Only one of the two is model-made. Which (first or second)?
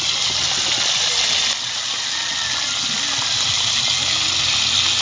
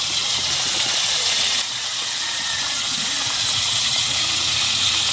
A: second